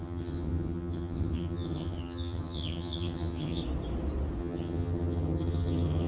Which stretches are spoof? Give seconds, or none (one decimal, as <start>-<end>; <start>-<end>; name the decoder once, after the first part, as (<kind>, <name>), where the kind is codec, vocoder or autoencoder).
0.0-3.6 (vocoder, HiFi-GAN); 4.4-6.1

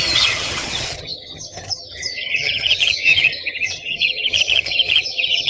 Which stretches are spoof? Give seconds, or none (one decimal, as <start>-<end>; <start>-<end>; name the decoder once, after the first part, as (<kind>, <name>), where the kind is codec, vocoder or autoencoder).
0.0-5.5 (vocoder, HiFi-GAN)

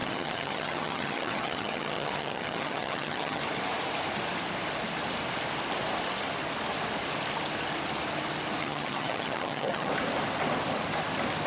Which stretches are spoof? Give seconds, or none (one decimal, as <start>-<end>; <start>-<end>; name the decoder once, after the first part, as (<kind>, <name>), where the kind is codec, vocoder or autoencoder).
0.0-3.4 (vocoder, HiFi-GAN); 8.6-9.9